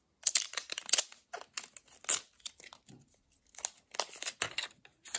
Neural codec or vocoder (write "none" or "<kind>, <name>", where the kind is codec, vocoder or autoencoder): none